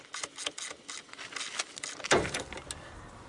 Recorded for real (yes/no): yes